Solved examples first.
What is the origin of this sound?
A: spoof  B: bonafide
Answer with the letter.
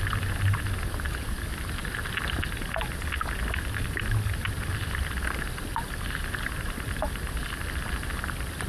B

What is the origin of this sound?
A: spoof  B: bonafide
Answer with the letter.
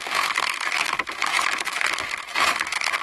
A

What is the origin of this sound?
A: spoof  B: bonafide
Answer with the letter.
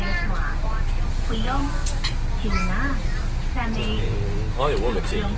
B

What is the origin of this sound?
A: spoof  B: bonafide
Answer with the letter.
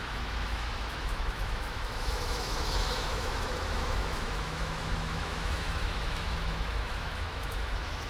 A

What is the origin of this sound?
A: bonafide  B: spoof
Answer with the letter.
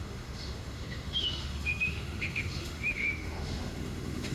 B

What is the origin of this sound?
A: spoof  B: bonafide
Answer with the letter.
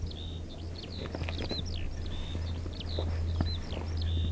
B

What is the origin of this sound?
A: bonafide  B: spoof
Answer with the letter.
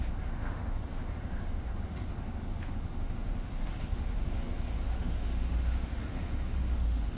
B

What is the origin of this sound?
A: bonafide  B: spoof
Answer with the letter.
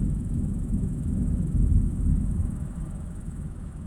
B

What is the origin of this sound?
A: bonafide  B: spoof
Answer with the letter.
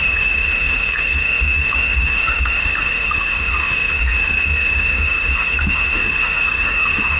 B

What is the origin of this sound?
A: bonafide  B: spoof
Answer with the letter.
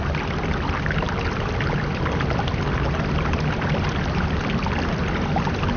A